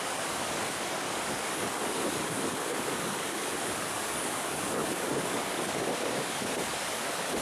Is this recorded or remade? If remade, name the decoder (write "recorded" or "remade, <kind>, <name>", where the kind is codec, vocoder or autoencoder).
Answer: remade, codec, DAC